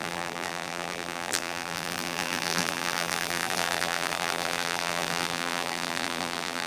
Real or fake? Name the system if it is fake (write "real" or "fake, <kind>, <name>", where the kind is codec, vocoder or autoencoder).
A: fake, vocoder, BigVGAN v2